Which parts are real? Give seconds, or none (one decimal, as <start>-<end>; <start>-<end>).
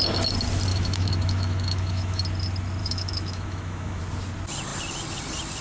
0.0-0.7; 2.2-2.8; 4.0-5.6